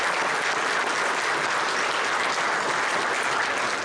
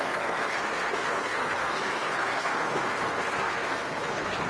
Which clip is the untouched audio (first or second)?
first